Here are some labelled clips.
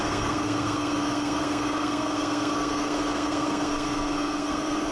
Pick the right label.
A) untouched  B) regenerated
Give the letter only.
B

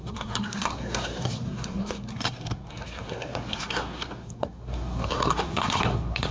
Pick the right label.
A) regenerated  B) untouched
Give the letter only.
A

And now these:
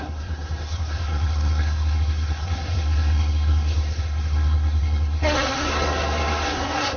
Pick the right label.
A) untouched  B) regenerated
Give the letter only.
B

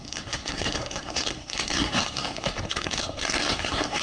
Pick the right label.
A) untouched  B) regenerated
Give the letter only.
B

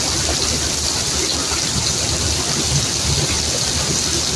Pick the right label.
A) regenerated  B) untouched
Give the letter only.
B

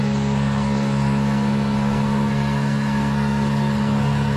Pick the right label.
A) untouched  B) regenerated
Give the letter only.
B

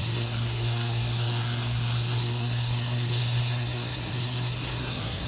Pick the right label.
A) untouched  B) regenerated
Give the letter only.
B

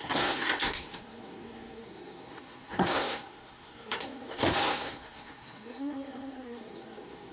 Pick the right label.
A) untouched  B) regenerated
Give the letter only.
B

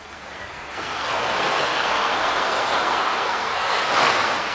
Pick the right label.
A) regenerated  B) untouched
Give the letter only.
A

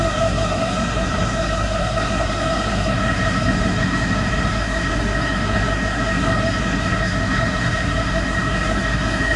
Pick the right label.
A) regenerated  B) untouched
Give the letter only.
A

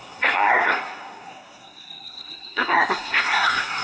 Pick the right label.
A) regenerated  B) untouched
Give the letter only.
A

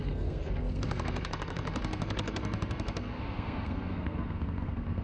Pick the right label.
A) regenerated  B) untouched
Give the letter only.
A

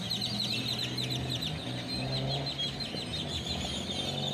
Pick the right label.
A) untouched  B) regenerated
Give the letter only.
A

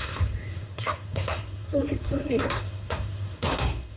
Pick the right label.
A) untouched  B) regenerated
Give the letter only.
B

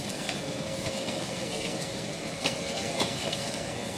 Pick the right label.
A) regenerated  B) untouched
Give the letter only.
A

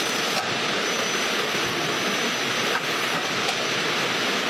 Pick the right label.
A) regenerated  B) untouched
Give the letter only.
B